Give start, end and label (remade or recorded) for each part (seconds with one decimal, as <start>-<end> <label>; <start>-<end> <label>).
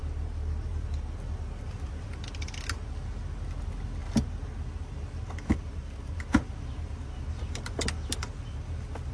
0.0-9.1 recorded